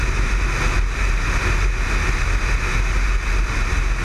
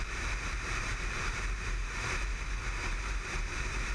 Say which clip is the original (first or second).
first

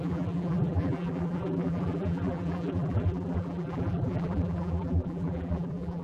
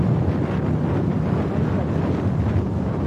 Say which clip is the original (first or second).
second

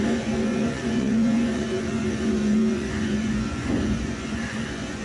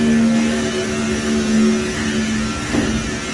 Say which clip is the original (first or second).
second